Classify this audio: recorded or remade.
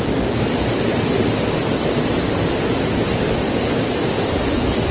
recorded